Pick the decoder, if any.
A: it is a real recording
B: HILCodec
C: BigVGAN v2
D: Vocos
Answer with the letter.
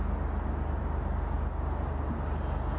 A